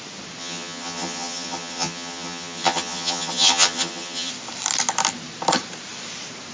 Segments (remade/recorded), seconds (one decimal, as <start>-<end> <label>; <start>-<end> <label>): 0.0-0.4 recorded; 0.4-4.3 remade; 4.3-6.5 recorded